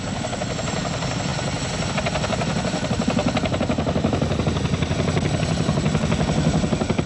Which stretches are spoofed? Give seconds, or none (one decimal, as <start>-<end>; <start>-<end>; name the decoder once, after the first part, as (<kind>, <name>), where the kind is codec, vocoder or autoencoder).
1.3-1.9 (vocoder, BigVGAN v2)

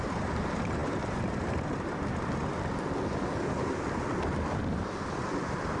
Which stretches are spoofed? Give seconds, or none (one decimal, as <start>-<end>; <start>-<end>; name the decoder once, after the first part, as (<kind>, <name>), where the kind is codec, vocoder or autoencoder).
0.0-2.5 (vocoder, BigVGAN v2); 5.2-5.8

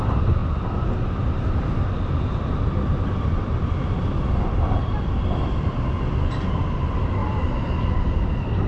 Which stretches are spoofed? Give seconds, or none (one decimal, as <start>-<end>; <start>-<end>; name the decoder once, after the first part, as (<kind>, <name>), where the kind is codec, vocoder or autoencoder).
0.0-0.4 (vocoder, BigVGAN v2); 2.2-8.7

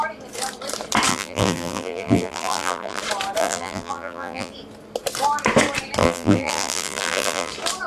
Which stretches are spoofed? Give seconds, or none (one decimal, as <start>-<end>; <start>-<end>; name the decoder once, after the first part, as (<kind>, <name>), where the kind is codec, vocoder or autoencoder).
1.1-3.0 (vocoder, BigVGAN v2); 3.4-4.5; 6.0-7.5

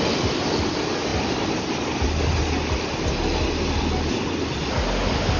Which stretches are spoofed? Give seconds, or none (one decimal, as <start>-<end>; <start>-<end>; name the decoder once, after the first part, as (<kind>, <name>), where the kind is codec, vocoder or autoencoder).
none

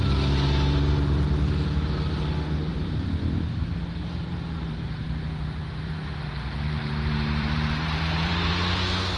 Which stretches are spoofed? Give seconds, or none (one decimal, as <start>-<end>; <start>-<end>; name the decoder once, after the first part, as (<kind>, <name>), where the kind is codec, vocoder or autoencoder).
2.7-6.1 (vocoder, BigVGAN v2); 6.8-8.5

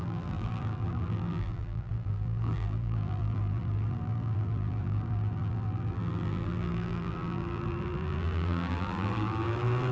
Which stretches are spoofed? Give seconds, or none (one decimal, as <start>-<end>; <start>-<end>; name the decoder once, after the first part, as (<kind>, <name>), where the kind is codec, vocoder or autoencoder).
0.0-9.9 (vocoder, BigVGAN v2)